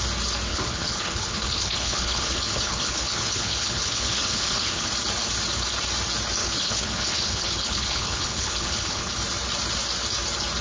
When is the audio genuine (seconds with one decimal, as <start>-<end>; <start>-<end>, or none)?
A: 0.0-0.5; 4.9-6.4; 9.1-10.6